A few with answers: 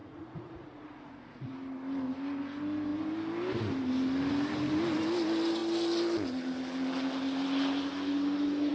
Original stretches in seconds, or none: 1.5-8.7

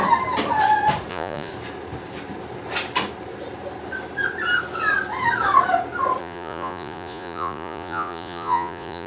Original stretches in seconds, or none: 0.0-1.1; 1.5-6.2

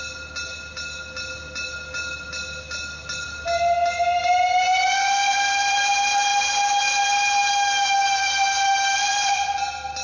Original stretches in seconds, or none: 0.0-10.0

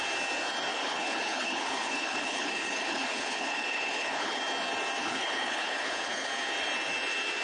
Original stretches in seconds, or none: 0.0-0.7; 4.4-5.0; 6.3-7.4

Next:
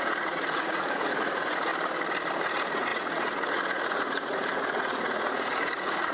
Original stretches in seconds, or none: 1.7-2.3

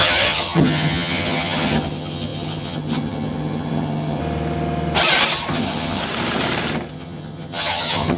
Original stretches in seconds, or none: 4.2-5.5; 6.0-6.9